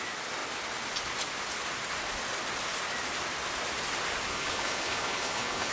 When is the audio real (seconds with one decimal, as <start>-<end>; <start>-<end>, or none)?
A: 0.0-4.3